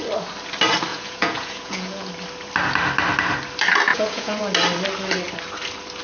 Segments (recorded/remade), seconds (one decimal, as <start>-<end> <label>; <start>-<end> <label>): 0.0-0.9 recorded; 0.9-2.1 remade; 2.1-3.9 recorded; 3.9-4.4 remade; 4.4-6.0 recorded